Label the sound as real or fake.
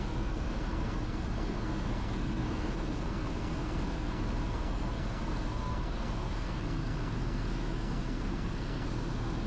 fake